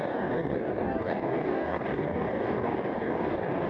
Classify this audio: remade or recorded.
remade